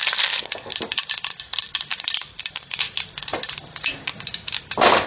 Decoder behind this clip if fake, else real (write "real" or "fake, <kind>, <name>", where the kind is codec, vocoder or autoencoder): fake, vocoder, BigVGAN v2